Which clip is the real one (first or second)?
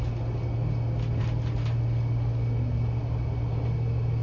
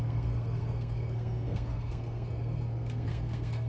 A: first